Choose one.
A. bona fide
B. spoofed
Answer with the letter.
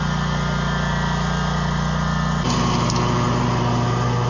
A